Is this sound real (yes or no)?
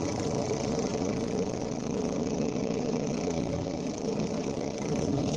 no